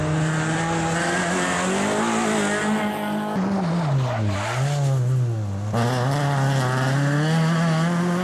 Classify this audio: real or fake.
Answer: real